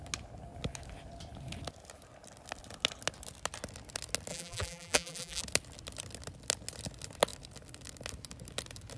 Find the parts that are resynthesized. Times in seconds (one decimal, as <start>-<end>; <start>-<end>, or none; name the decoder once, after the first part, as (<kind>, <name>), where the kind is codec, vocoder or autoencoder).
4.3-5.4 (vocoder, BigVGAN v2)